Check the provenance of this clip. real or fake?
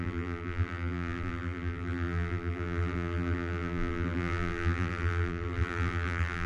fake